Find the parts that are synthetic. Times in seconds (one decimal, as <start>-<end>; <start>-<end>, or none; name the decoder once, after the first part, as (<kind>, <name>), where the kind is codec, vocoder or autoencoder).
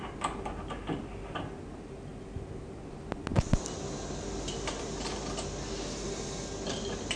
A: none